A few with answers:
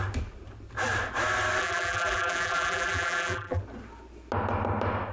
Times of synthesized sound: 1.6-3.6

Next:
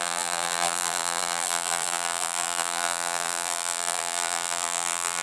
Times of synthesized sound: 0.0-5.2